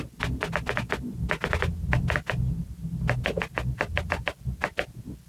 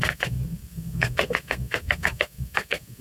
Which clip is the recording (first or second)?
first